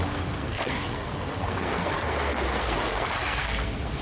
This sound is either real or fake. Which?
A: fake